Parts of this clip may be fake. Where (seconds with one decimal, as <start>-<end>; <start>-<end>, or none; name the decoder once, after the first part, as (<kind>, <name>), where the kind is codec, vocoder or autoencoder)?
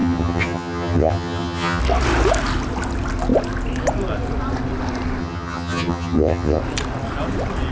0.0-1.8 (vocoder, HiFi-GAN); 5.2-6.6